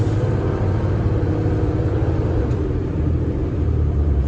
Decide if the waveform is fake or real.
fake